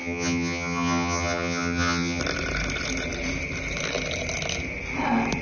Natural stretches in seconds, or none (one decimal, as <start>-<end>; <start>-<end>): 2.2-5.4